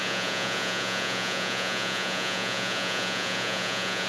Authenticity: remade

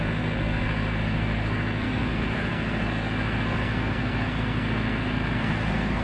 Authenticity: remade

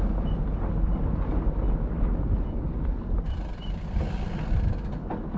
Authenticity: recorded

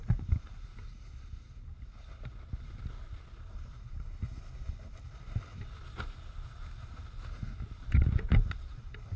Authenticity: recorded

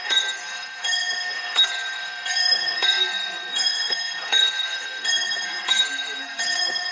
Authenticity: remade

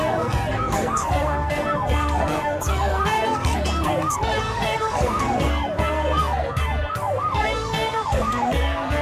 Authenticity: remade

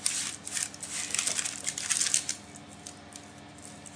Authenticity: recorded